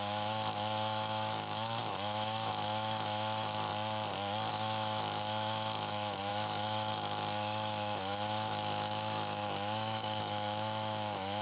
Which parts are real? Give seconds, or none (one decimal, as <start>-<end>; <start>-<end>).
3.7-4.5

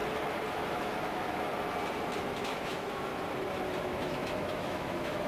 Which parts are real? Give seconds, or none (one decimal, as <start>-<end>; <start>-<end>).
0.0-0.5; 1.5-2.2; 3.1-3.8

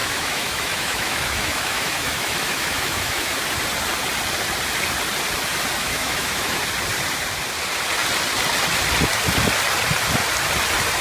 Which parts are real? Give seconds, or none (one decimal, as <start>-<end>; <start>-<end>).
3.4-5.8; 6.6-11.0

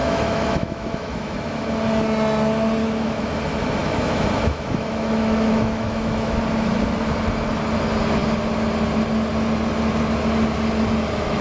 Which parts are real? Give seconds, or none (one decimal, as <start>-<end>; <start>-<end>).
1.7-2.8; 3.3-3.8; 6.4-11.4